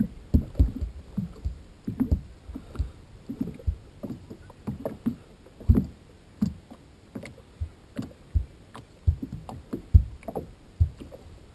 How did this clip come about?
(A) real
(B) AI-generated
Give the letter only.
A